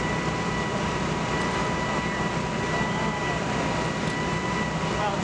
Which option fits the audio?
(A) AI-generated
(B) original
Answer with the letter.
B